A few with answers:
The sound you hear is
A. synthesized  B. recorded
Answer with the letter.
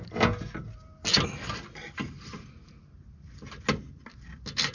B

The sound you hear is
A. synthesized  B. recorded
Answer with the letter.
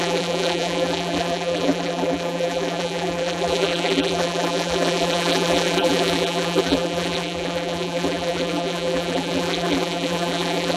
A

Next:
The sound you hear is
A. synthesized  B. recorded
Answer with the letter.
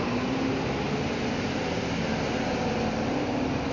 B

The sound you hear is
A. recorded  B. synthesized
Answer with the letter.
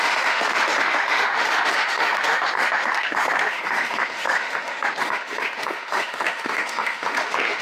B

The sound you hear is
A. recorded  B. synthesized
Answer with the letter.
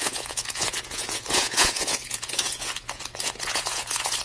B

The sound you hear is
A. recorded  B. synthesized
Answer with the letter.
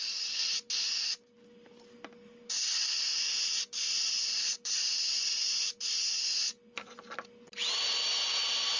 B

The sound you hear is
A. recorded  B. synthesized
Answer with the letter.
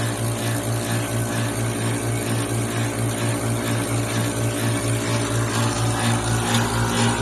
A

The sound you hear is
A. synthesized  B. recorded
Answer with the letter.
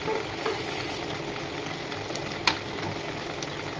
B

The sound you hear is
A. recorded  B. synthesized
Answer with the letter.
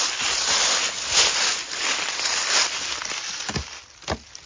A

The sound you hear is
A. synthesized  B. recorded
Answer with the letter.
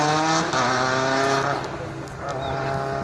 B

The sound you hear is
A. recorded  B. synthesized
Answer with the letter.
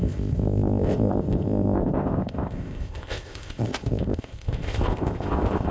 B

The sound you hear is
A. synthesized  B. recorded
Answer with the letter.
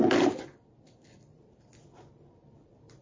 A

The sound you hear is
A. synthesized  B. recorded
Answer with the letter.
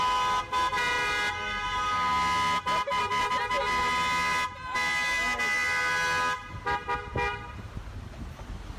B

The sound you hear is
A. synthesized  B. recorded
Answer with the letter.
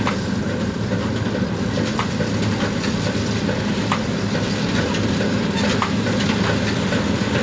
B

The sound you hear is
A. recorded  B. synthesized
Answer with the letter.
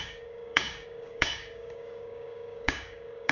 B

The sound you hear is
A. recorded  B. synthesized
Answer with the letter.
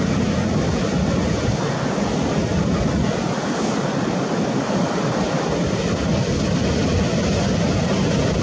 A